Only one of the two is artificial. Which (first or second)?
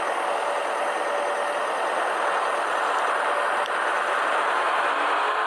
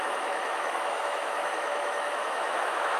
second